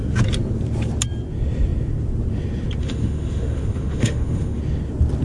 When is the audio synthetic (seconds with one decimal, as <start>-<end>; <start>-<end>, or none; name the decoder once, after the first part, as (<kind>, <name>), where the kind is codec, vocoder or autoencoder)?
2.8-4.6 (autoencoder, DAC-VAE)